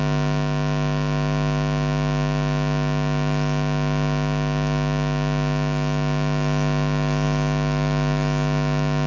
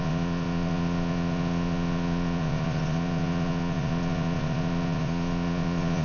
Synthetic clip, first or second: second